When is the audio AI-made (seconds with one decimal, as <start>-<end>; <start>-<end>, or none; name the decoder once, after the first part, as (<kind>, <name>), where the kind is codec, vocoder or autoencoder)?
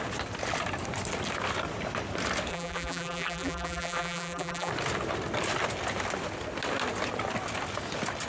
2.5-4.7 (vocoder, BigVGAN v2)